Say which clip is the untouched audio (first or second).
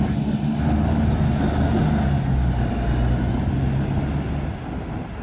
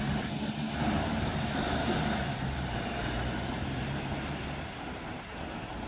first